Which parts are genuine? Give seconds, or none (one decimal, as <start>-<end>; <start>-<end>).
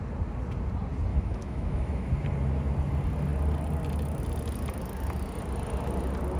0.0-1.1; 2.1-6.4